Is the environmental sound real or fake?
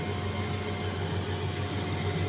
real